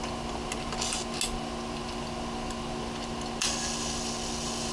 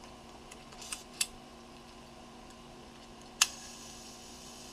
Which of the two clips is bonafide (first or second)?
first